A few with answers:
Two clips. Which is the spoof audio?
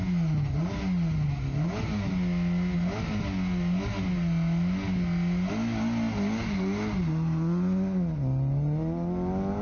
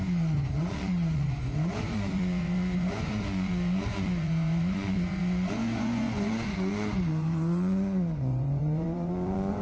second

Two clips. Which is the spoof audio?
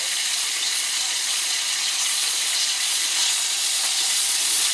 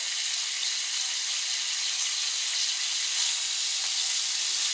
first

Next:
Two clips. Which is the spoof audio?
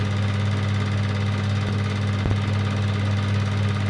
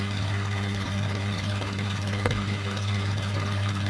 second